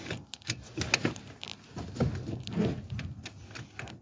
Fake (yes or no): no